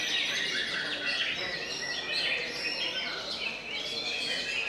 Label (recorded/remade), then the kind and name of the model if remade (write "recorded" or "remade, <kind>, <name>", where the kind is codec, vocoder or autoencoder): recorded